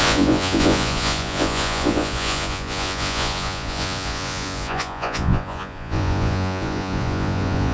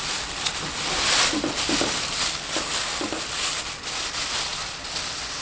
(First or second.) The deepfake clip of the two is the first